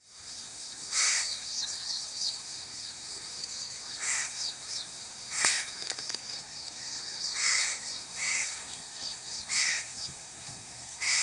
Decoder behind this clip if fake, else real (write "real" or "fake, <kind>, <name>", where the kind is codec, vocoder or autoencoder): fake, codec, SNAC